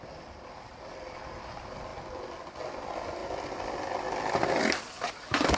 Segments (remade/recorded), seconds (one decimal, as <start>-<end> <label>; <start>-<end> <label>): 0.0-5.6 recorded